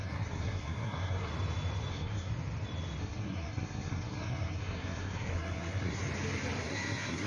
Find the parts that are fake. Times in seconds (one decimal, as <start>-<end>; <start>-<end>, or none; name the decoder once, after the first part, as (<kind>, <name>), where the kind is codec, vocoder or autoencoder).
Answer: 0.0-1.3 (codec, SNAC); 1.9-2.3; 3.0-6.0; 6.6-7.3